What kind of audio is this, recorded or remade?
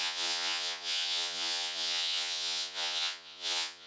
remade